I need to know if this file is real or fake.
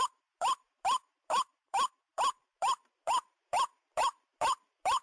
fake